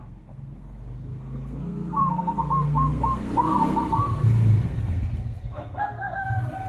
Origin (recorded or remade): remade